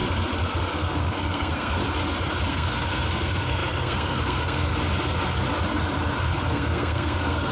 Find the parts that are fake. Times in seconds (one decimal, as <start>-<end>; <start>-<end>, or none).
0.6-1.8; 2.5-4.7; 6.5-7.5

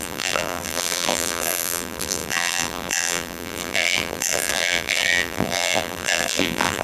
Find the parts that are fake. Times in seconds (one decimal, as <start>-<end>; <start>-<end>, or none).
0.0-6.8

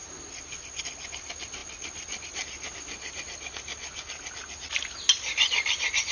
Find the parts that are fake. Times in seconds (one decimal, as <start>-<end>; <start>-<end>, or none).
none

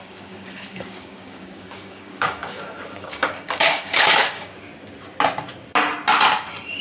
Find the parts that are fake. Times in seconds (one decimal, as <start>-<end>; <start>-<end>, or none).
0.0-4.7

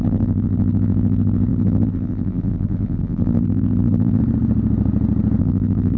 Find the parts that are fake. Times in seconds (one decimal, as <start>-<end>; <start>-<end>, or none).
0.0-4.2; 5.4-6.0

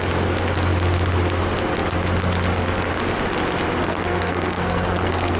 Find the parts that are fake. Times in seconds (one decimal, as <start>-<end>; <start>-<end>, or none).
3.8-5.4

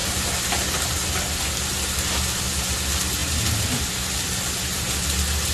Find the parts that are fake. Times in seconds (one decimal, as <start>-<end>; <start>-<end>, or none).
none

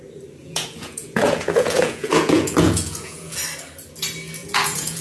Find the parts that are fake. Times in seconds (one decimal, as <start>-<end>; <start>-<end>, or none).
0.4-3.4; 4.4-5.0